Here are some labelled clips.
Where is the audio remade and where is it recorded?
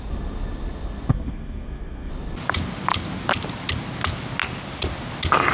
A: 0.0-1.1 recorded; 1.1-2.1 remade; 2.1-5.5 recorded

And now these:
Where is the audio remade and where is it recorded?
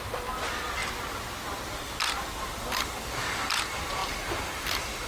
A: 0.0-5.1 recorded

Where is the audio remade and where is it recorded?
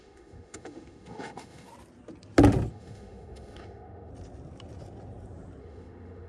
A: 0.0-1.7 remade; 1.7-2.7 recorded; 2.7-4.1 remade; 4.1-5.6 recorded; 5.6-6.3 remade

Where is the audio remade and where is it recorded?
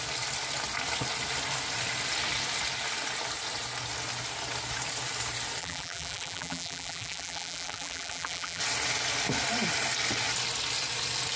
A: 0.0-5.6 recorded; 5.6-8.6 remade; 8.6-11.4 recorded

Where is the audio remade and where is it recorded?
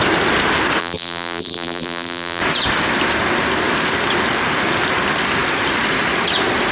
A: 0.0-0.8 recorded; 0.8-2.4 remade; 2.4-6.7 recorded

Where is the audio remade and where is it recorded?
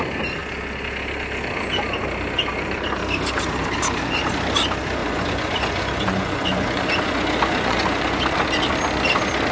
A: 0.0-5.0 recorded; 5.0-8.2 remade; 8.2-9.5 recorded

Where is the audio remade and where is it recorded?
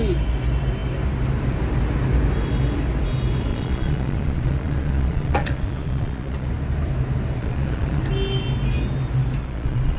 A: 0.0-3.5 recorded; 3.5-6.5 remade; 6.5-7.4 recorded; 7.4-8.0 remade; 8.0-9.4 recorded; 9.4-10.0 remade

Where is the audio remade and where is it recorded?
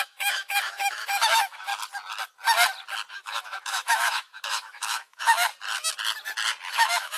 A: 0.0-1.7 remade; 1.7-3.1 recorded; 3.1-5.5 remade; 5.5-6.7 recorded; 6.7-7.2 remade